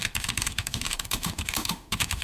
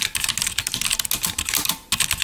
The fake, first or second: first